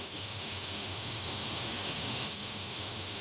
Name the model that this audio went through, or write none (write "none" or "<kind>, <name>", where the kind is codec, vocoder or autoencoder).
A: autoencoder, DAC-VAE